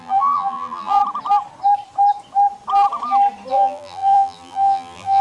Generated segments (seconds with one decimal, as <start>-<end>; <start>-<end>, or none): 0.0-1.0; 3.5-5.2